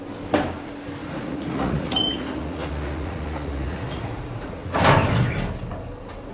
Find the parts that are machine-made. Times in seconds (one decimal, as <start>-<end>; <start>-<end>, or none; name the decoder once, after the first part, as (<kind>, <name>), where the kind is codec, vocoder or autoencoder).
1.0-4.8 (vocoder, Vocos)

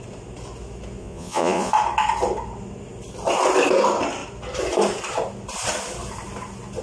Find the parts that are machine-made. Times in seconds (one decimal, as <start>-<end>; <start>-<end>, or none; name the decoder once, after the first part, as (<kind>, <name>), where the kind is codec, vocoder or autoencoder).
1.0-1.7 (vocoder, Vocos)

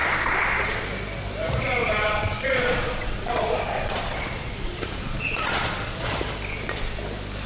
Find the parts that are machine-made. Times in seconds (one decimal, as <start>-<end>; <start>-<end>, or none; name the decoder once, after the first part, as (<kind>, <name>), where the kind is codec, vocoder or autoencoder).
0.0-0.8 (vocoder, Vocos); 1.8-6.1

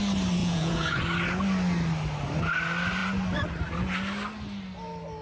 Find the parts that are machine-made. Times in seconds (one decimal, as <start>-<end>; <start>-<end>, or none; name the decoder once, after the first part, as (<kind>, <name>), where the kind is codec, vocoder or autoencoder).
0.4-1.0 (vocoder, Vocos)

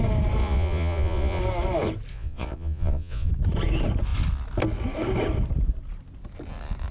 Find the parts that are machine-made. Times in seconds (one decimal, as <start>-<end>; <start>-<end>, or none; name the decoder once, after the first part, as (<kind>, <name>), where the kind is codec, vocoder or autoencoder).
0.4-1.4 (vocoder, Vocos); 2.1-3.3

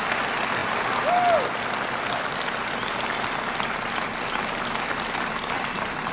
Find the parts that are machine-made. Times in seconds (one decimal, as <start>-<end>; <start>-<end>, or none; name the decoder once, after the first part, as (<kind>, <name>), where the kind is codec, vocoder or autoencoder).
none

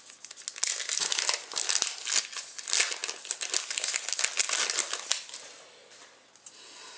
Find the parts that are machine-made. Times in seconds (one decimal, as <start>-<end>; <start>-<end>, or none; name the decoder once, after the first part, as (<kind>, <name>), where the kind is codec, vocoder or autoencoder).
none